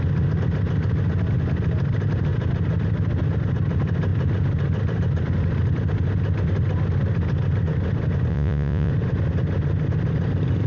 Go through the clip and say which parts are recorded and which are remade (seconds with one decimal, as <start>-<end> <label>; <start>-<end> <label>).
0.0-8.3 recorded; 8.3-8.9 remade; 8.9-10.7 recorded